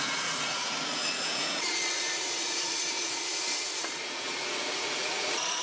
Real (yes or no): no